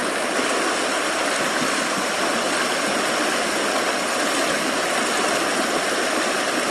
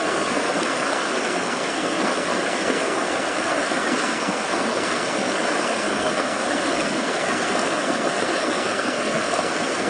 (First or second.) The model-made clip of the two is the second